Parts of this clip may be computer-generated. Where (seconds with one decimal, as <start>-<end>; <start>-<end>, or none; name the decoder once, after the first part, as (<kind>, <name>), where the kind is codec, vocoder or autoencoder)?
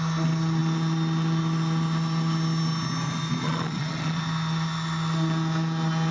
3.4-4.2 (vocoder, Vocos)